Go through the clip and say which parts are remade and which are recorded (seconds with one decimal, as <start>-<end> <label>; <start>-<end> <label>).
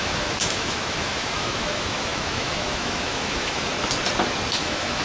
0.0-3.7 remade; 3.7-4.6 recorded; 4.6-5.0 remade